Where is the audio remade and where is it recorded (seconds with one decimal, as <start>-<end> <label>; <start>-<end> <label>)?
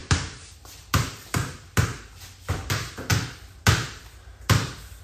0.0-5.0 recorded